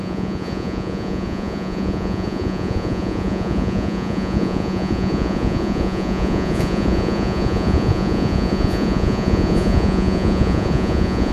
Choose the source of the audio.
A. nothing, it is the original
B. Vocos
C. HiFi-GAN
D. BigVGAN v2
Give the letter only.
B